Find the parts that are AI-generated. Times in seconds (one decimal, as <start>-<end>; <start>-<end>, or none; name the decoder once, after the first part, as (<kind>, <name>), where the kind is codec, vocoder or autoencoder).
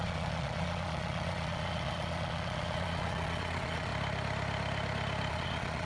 0.0-3.9 (vocoder, Vocos); 5.3-5.9